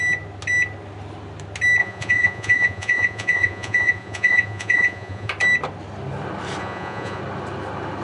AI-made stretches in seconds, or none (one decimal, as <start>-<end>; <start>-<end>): 1.8-5.3; 6.6-7.2

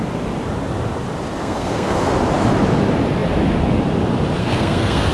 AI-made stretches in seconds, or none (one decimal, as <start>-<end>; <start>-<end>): 1.4-2.1; 4.4-5.1